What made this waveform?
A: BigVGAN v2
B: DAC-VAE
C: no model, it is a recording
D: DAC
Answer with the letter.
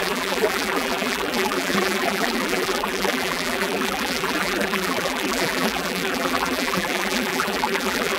A